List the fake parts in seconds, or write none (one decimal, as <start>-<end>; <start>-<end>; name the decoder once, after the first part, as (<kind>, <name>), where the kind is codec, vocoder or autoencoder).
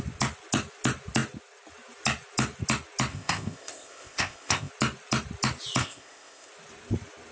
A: 3.1-4.7 (codec, ZipCodec); 5.8-6.5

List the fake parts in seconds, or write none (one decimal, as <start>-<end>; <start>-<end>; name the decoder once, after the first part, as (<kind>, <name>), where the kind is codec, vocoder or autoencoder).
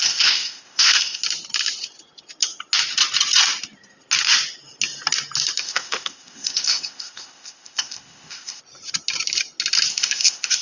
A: 0.0-1.2 (codec, ZipCodec); 5.6-8.6; 9.9-10.6